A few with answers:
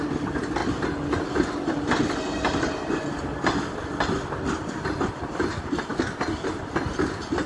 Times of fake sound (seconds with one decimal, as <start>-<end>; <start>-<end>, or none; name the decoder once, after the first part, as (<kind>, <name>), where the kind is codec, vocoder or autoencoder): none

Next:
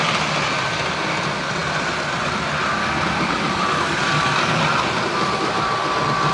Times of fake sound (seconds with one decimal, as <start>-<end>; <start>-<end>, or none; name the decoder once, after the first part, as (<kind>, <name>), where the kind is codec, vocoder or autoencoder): none

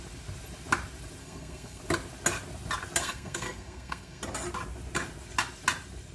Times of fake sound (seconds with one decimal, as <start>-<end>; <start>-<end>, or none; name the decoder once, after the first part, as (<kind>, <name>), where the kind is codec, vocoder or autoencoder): 1.2-1.8 (codec, SNAC); 3.0-4.2

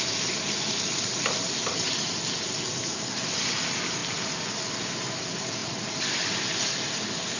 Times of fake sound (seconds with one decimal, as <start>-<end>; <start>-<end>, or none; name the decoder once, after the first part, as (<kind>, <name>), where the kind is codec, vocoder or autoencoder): none

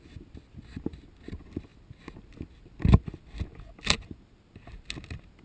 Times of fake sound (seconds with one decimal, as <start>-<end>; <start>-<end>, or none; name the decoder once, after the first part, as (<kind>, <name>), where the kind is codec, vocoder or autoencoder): none

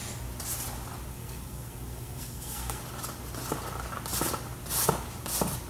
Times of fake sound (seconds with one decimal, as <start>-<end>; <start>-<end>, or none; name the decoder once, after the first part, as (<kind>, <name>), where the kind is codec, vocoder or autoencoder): 1.1-2.8 (codec, SNAC)

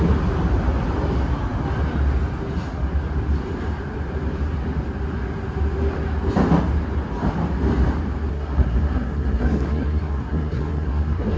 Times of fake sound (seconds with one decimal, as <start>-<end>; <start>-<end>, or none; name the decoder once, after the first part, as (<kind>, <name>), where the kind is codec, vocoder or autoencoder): 8.3-11.4 (codec, SNAC)